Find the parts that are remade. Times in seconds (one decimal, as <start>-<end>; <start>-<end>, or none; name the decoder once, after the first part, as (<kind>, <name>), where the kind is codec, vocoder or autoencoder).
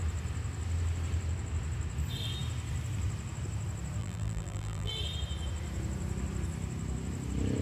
4.0-4.9 (vocoder, BigVGAN v2)